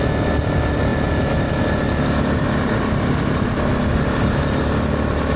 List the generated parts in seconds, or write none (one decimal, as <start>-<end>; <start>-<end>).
none